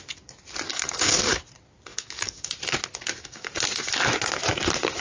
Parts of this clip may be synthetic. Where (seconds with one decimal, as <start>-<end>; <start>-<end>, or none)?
0.7-1.4; 1.9-2.5; 3.0-3.5